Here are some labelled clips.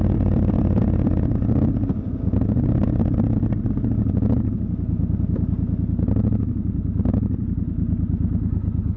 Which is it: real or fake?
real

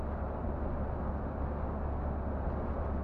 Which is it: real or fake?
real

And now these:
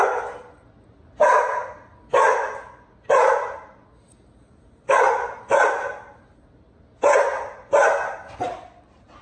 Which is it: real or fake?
real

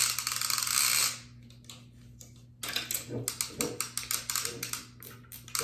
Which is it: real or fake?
real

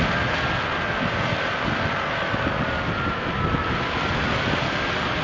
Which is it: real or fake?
real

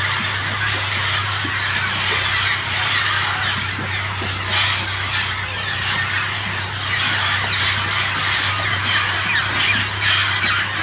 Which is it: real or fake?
real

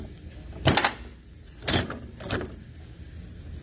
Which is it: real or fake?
real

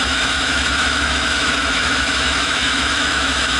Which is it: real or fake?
fake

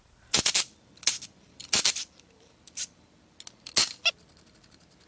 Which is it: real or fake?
real